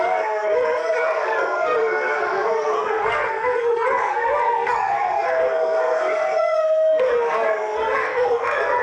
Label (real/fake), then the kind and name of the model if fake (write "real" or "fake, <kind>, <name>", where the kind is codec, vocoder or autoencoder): fake, codec, SNAC